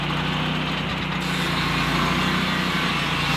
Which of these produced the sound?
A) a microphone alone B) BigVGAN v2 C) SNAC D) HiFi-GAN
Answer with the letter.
A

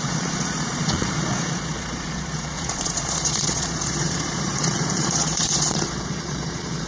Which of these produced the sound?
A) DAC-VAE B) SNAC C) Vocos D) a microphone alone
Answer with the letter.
C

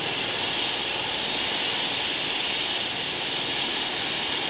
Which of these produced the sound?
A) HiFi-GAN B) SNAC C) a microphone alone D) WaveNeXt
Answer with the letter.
C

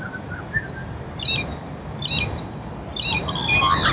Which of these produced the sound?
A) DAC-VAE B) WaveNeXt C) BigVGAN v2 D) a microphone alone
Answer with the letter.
D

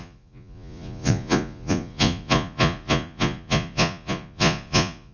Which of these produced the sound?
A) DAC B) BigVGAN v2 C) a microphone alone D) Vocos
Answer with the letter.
D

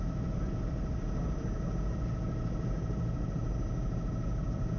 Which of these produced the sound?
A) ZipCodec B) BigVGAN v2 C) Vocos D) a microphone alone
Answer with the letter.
D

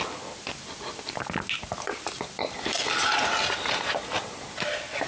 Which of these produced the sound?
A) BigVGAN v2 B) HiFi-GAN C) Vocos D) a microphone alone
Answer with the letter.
D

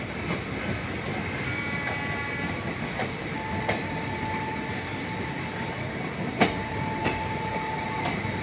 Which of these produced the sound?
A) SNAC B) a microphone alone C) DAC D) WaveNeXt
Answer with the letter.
B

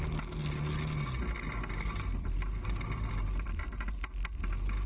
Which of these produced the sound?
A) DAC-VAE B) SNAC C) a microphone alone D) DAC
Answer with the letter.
C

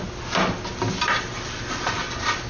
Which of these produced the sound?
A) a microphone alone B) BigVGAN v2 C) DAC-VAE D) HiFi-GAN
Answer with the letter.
A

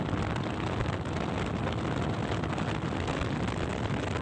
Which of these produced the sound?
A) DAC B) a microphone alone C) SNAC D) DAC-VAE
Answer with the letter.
B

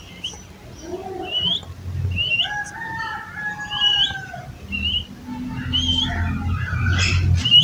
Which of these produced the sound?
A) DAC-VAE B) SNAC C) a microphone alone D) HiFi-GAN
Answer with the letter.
C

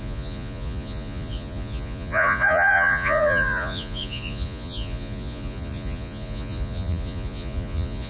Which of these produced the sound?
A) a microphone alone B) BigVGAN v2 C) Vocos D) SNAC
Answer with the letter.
C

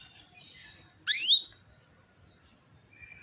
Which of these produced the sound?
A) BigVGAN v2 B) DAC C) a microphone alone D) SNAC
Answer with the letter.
C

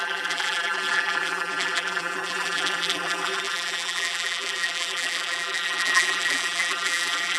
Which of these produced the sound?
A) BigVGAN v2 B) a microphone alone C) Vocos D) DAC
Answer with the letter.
A